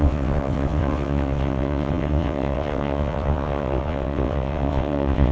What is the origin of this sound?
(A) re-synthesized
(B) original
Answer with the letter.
A